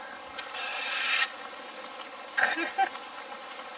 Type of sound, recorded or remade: recorded